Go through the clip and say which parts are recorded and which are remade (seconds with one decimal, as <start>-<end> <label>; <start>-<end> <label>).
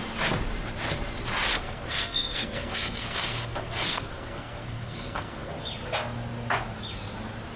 0.0-1.5 recorded; 1.5-5.5 remade; 5.5-7.6 recorded